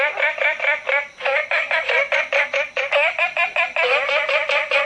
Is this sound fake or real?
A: real